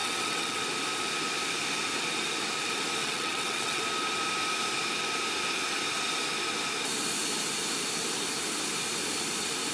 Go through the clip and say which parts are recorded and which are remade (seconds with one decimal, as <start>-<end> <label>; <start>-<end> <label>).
0.0-0.6 remade; 0.6-3.0 recorded; 3.0-3.8 remade; 3.8-9.7 recorded